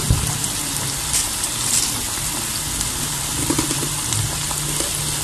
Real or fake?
real